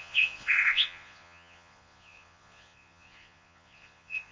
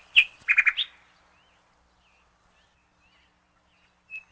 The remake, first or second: first